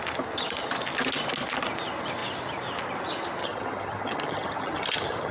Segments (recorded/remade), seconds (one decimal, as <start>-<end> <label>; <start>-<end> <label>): 0.0-3.4 recorded; 3.4-5.3 remade